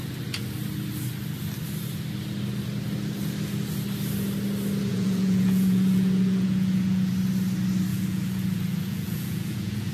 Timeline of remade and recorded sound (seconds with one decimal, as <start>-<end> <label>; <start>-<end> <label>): 0.0-4.9 recorded; 4.9-7.1 remade; 7.1-7.9 recorded; 7.9-9.9 remade